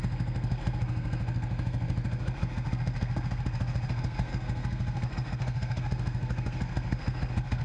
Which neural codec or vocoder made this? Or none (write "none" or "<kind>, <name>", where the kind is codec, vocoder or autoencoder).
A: codec, SNAC